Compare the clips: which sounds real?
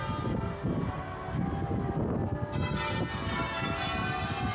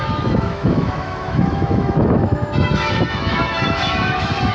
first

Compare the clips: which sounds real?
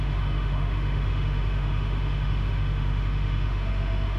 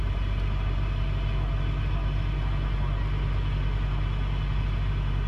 second